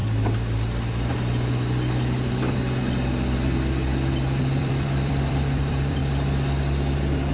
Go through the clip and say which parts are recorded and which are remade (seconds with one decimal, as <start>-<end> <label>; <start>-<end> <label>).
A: 0.0-4.4 recorded; 4.4-6.0 remade; 6.0-7.3 recorded